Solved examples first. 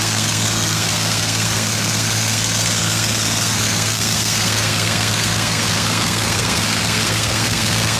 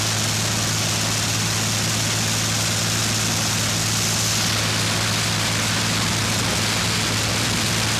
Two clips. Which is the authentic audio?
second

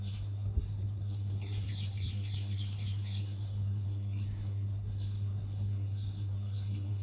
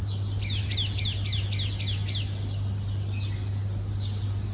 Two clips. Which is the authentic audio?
second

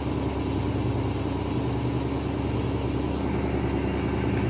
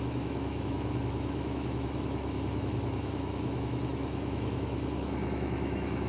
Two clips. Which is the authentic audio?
first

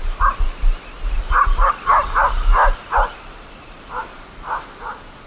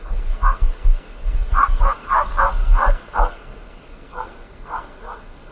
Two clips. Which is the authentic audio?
first